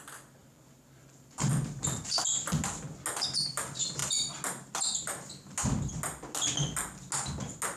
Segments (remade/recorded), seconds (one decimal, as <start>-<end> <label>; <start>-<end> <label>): 0.0-0.4 recorded; 0.4-1.5 remade; 1.5-7.8 recorded